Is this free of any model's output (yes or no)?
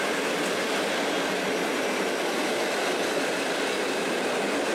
yes